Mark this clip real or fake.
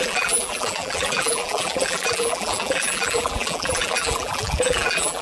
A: fake